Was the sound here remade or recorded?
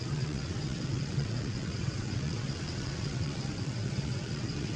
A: remade